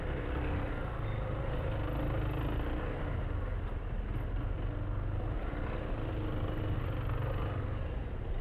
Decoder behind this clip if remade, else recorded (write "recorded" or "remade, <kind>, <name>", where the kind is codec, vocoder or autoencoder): recorded